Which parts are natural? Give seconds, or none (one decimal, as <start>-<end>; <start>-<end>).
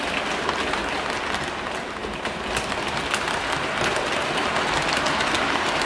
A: 0.0-5.9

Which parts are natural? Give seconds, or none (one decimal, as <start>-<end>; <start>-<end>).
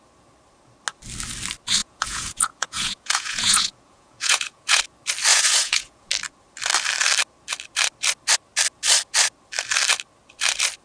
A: 0.0-1.8; 4.8-5.3; 6.1-10.8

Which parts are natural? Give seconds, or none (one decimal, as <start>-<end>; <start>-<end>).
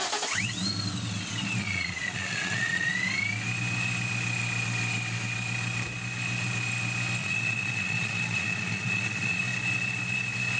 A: 0.0-1.6; 2.9-7.2; 9.4-10.6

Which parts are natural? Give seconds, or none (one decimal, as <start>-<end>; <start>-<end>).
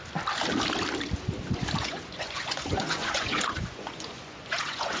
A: 0.0-1.8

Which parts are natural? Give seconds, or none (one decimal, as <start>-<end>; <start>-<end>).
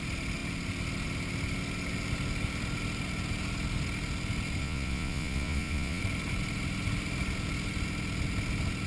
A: 0.0-4.6; 6.0-8.9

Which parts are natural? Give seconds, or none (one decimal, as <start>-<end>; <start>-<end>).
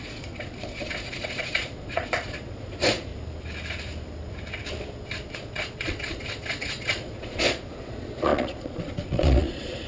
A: 3.1-5.3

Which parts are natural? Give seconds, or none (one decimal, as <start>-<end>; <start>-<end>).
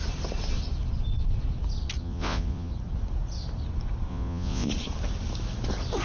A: 0.0-2.0; 2.7-4.1; 4.7-6.0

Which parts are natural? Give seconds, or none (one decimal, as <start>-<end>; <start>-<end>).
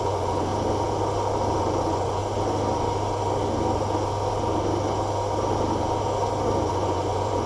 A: 0.5-1.6; 2.2-6.7